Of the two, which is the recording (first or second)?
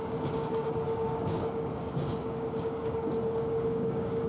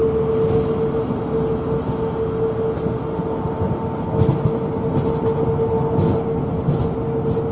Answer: second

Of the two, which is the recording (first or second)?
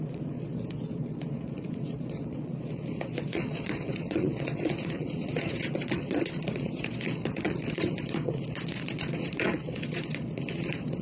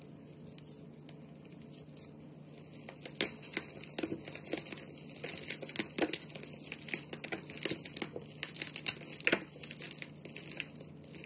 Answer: second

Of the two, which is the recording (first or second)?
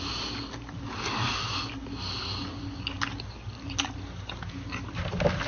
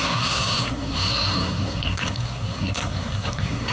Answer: first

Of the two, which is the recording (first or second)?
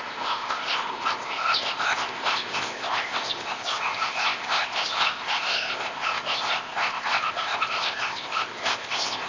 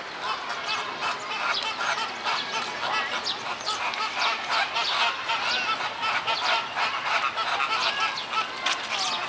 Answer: second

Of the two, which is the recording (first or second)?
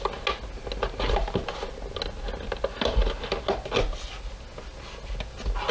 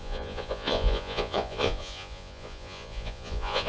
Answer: first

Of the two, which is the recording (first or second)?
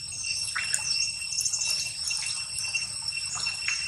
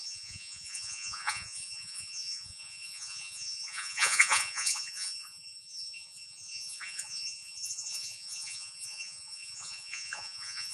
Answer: first